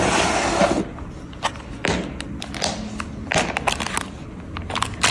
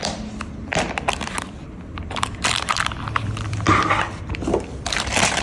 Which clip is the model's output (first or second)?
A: second